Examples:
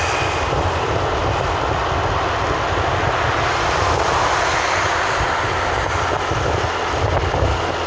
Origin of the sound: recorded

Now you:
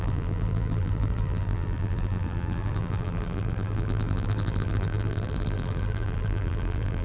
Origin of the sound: remade